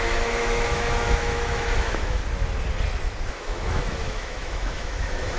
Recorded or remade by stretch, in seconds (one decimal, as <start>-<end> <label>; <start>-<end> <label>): 0.0-2.2 remade; 2.2-3.3 recorded; 3.3-5.4 remade